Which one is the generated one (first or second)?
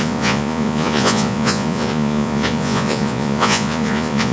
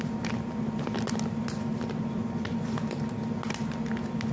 first